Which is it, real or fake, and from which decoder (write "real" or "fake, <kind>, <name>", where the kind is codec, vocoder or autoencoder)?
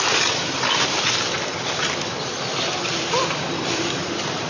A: real